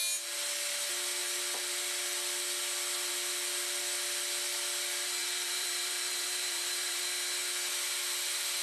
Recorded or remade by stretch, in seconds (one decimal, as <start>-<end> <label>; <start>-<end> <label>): 0.0-5.2 recorded; 5.2-7.0 remade; 7.0-8.6 recorded